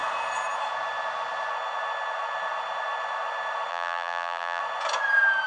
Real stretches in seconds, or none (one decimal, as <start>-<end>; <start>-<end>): 0.0-3.7; 4.6-5.5